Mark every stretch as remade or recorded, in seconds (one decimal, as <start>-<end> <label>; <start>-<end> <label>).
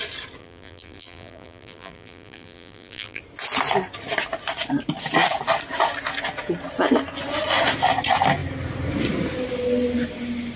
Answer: 0.0-0.4 recorded; 0.4-3.2 remade; 3.2-10.6 recorded